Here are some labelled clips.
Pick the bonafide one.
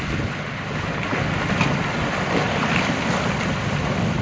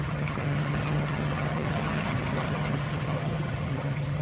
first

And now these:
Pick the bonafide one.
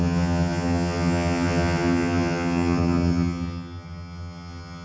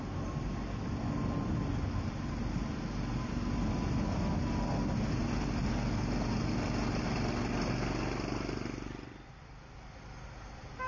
second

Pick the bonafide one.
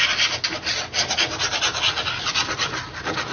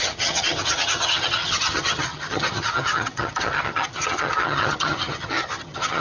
first